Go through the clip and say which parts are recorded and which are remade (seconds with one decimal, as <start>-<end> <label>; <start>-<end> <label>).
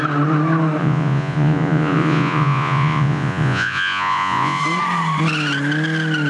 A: 0.0-0.8 recorded; 0.8-4.6 remade; 4.6-6.3 recorded